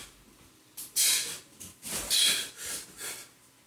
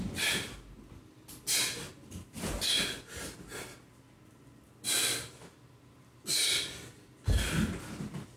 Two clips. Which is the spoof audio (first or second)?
first